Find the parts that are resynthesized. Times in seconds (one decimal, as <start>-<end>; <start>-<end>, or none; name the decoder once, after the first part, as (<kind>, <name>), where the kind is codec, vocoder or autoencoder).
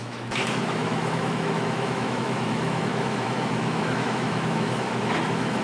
0.0-5.6 (autoencoder, DAC-VAE)